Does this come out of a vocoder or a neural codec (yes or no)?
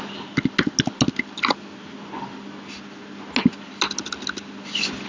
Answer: no